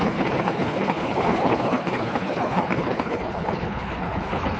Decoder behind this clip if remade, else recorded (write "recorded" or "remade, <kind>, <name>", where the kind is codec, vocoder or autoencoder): remade, codec, HILCodec